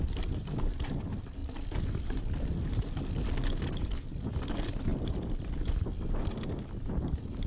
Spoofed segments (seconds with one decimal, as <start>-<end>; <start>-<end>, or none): none